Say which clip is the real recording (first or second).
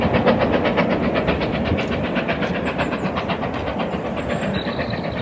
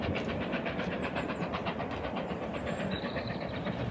first